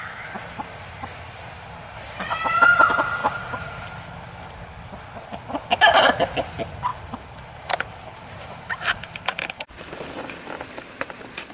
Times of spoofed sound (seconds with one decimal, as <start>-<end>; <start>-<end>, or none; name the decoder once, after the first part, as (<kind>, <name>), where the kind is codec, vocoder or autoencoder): 3.2-3.9 (vocoder, BigVGAN v2); 6.9-9.7